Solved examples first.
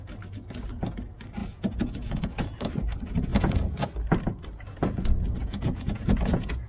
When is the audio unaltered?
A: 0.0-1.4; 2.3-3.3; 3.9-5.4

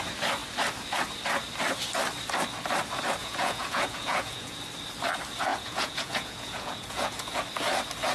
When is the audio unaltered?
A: 0.0-3.2; 4.6-5.5; 7.4-8.1

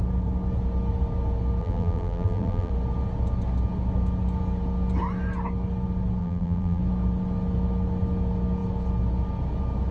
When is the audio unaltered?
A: 0.0-1.6; 2.7-6.2; 6.8-9.9

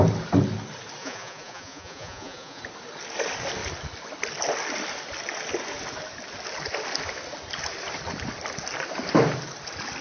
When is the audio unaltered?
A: 0.0-1.0; 2.6-10.0

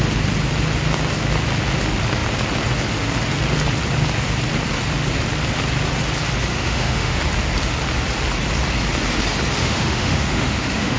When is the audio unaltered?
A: 0.0-6.5; 7.2-9.6

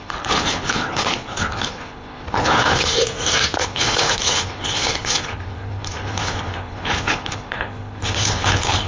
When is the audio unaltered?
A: 3.0-3.6

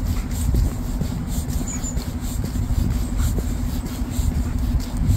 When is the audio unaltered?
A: 0.0-5.2

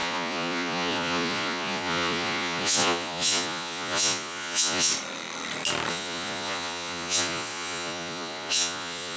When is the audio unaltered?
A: 4.9-5.9